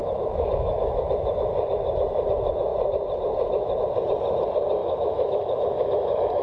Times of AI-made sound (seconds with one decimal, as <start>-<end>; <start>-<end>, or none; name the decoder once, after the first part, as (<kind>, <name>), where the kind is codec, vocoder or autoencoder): 0.0-1.2 (autoencoder, DAC-VAE); 4.8-6.4